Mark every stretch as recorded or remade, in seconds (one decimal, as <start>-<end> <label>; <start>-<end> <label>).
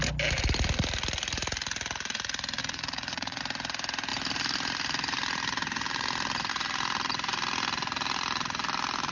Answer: 0.0-2.6 recorded; 2.6-3.4 remade; 3.4-9.1 recorded